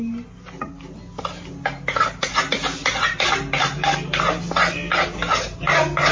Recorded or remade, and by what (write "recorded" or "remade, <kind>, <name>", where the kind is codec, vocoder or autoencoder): recorded